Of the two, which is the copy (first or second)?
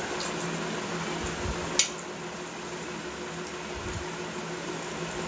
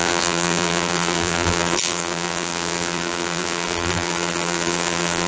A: second